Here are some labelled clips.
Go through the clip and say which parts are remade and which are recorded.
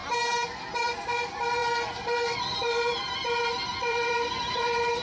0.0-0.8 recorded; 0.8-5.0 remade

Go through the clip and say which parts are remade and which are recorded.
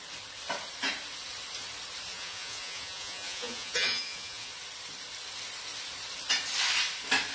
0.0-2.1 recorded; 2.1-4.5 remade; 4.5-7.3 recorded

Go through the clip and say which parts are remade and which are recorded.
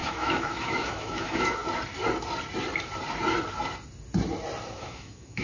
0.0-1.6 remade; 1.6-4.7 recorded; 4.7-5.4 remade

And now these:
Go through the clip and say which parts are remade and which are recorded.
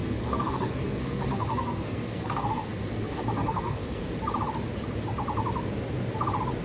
0.0-4.0 remade; 4.0-6.6 recorded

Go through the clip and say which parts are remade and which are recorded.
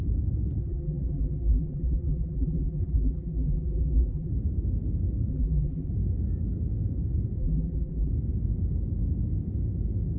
0.0-0.6 recorded; 0.6-4.3 remade; 4.3-5.3 recorded; 5.3-5.9 remade; 5.9-7.4 recorded; 7.4-8.1 remade; 8.1-10.2 recorded